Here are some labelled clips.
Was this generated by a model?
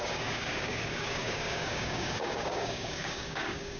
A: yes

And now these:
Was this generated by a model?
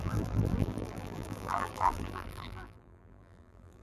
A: yes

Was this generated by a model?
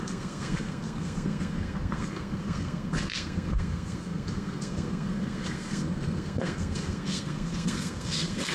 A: yes